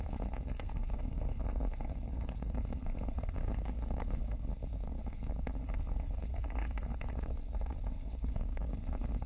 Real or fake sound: fake